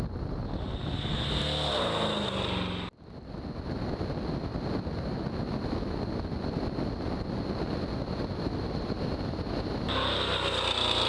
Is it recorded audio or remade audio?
recorded